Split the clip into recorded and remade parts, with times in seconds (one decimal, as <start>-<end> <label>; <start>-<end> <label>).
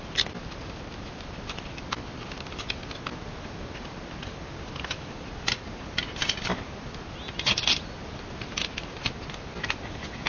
0.0-10.3 recorded